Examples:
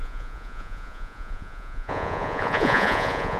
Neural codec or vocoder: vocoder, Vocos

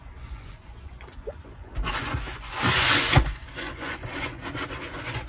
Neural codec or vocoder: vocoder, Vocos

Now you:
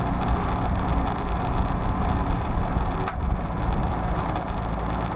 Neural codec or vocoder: none